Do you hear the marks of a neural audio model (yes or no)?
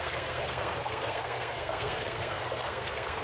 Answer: yes